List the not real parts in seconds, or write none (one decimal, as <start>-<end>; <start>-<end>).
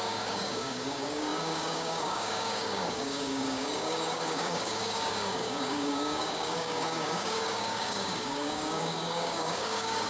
0.0-10.1